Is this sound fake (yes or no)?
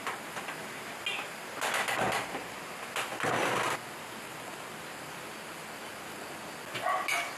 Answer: no